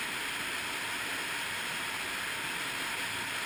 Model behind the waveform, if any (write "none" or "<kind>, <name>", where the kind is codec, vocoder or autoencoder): none